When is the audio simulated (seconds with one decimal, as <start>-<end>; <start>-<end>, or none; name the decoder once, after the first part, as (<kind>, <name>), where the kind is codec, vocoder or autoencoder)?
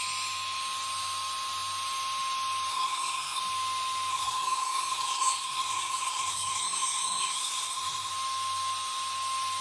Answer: 2.7-3.4 (codec, SNAC); 4.1-8.1